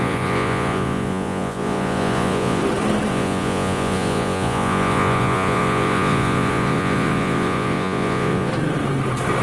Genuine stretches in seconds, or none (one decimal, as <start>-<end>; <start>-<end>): 2.6-3.1; 8.5-9.4